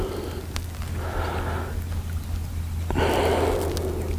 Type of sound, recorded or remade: recorded